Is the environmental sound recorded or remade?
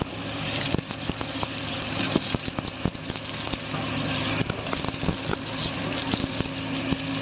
recorded